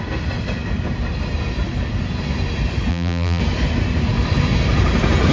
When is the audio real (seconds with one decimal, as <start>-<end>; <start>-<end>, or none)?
0.0-2.9; 3.4-5.3